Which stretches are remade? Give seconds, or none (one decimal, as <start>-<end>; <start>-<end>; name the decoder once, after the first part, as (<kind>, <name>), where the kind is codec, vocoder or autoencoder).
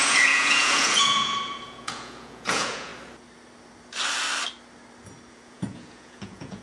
0.0-2.9 (vocoder, Vocos); 5.3-6.6